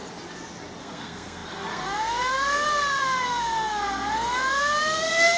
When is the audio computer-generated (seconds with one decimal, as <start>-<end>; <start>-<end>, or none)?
0.8-5.4